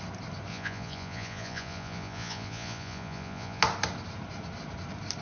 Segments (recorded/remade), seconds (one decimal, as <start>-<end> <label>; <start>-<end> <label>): 0.0-0.5 recorded; 0.5-3.6 remade; 3.6-5.2 recorded